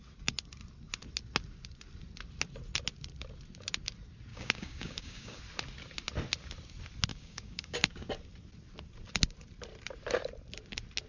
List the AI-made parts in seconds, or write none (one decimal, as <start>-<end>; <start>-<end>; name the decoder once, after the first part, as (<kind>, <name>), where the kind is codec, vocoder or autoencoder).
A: 4.3-5.4 (codec, DAC); 7.1-8.1